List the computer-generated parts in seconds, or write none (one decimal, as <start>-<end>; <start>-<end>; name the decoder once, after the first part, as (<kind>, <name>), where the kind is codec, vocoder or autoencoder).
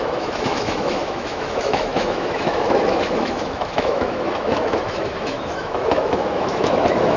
0.0-7.2 (autoencoder, DAC-VAE)